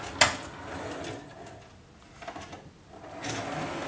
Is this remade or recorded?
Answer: recorded